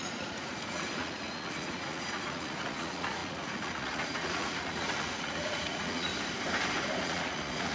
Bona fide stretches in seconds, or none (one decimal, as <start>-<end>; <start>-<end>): 6.1-7.0

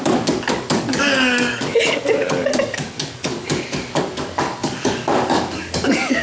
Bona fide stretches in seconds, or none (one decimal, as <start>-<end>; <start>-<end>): none